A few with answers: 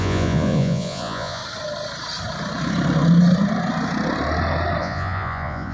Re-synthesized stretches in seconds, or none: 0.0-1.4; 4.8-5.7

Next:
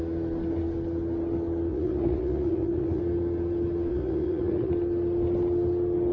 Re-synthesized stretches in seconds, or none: 1.7-3.0; 3.9-4.7

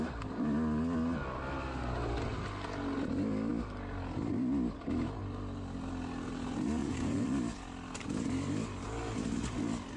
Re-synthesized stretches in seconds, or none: 6.8-7.3

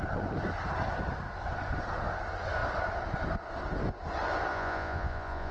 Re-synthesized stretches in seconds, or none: 4.5-5.5